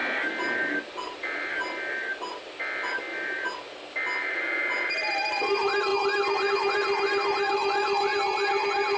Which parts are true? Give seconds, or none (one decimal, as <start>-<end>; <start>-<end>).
0.0-0.9; 1.5-5.0